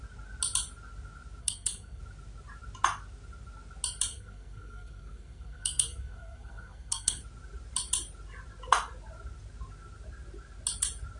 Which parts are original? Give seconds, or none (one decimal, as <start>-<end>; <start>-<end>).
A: 0.0-1.4; 2.0-4.1; 7.2-11.2